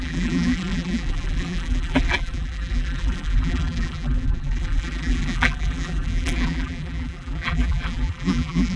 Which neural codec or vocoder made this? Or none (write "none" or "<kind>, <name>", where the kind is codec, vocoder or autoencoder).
vocoder, BigVGAN v2